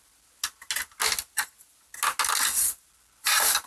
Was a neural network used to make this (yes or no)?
no